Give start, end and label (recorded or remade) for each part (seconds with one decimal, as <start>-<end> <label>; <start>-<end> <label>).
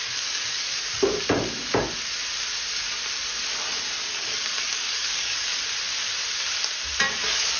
0.0-1.1 remade; 1.1-4.1 recorded; 4.1-5.5 remade; 5.5-7.1 recorded; 7.1-7.6 remade